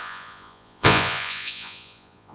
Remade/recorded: remade